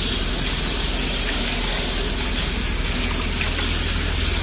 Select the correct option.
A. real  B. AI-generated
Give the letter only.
A